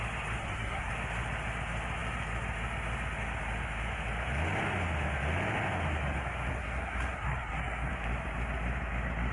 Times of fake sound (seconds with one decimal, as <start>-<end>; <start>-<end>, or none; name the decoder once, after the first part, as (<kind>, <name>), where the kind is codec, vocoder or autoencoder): 0.4-0.9 (codec, SNAC); 6.5-7.9